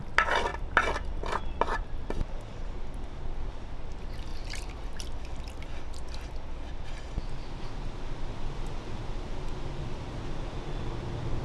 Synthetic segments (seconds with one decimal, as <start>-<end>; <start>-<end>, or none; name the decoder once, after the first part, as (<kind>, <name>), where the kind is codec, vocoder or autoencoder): none